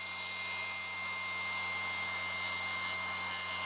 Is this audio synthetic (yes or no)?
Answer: no